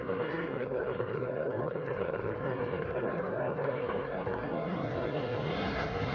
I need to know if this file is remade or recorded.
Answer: remade